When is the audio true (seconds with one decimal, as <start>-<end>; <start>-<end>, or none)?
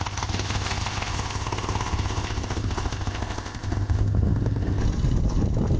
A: 4.8-5.8